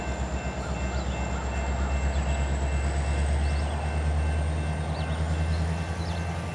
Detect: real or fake real